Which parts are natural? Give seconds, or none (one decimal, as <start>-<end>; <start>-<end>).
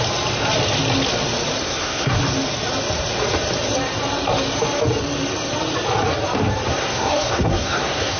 0.0-1.6; 2.2-6.7